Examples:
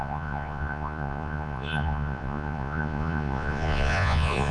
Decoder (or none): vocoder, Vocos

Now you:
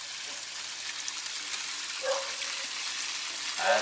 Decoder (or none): none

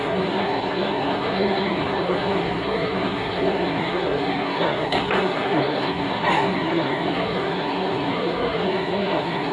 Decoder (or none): codec, SNAC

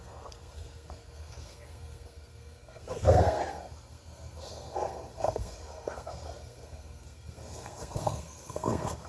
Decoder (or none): codec, SNAC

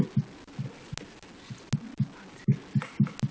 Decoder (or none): none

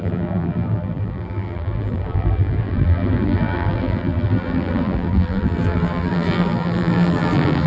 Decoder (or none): vocoder, BigVGAN v2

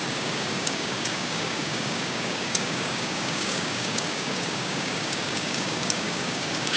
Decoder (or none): codec, DAC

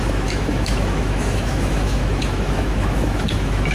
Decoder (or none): autoencoder, DAC-VAE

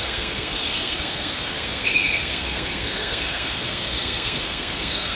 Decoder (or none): codec, SNAC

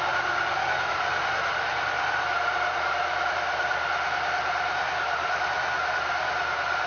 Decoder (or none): none